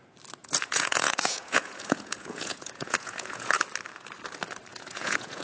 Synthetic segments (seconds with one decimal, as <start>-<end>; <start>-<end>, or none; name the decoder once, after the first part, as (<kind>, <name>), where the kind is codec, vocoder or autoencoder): 0.4-3.6 (vocoder, Vocos); 4.7-5.4